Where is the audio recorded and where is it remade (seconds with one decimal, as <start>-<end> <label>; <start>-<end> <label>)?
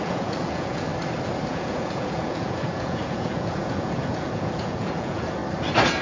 0.0-0.9 remade; 0.9-1.5 recorded; 1.5-5.4 remade; 5.4-6.0 recorded